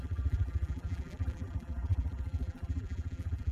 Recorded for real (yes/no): no